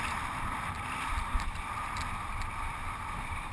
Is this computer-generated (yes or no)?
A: yes